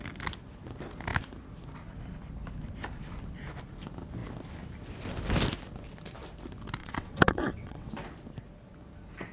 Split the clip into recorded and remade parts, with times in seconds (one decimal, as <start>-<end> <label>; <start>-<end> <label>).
0.0-6.8 recorded; 6.8-7.9 remade; 7.9-9.3 recorded